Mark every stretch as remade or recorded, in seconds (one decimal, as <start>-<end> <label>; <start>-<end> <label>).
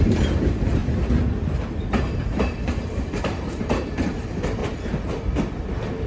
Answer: 0.0-0.8 remade; 0.8-1.9 recorded; 1.9-4.6 remade; 4.6-6.1 recorded